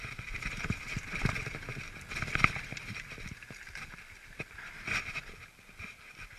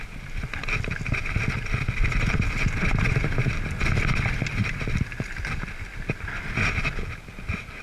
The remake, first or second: first